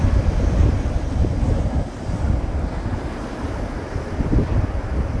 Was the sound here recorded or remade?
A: recorded